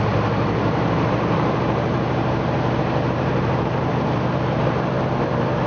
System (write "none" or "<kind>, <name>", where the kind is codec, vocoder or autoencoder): vocoder, BigVGAN v2